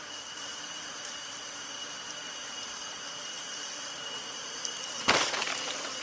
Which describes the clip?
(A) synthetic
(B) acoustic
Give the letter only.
A